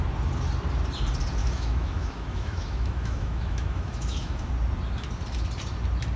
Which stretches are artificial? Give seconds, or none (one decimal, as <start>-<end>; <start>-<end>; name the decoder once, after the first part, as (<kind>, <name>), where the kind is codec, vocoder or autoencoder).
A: 1.4-4.5 (autoencoder, DAC-VAE)